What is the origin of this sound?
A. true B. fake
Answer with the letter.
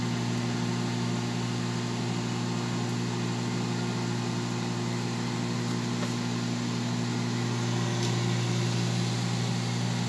A